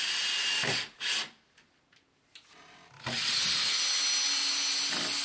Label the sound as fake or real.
real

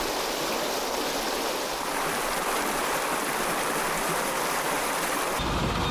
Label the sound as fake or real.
real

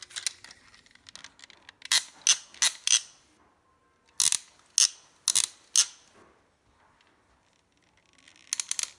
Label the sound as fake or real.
real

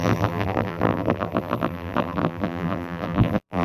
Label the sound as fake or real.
fake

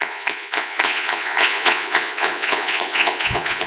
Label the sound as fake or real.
fake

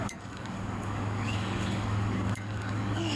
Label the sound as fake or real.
fake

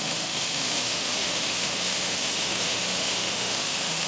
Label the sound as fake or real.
fake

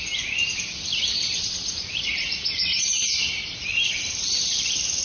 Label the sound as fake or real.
fake